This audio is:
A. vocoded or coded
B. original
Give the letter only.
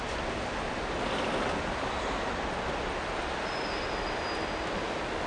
B